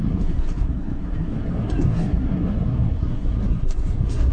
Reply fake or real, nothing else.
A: fake